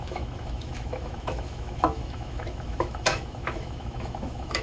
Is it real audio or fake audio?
fake